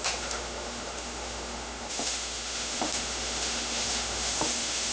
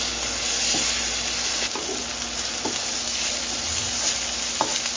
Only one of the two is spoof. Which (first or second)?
first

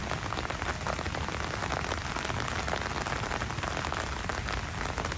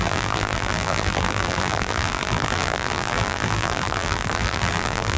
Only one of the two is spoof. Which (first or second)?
second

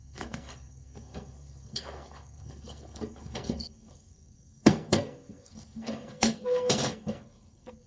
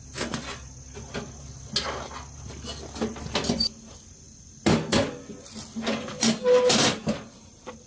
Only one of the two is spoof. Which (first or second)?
first